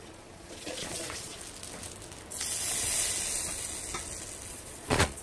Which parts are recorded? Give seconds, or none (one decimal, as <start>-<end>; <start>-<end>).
1.4-4.5